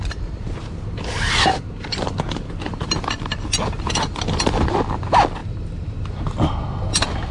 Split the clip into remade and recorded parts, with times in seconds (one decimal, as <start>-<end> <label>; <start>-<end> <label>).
0.0-7.3 recorded